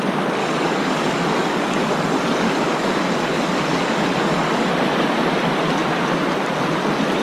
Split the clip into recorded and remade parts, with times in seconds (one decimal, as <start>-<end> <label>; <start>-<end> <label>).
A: 0.0-0.4 recorded; 0.4-4.7 remade; 4.7-7.2 recorded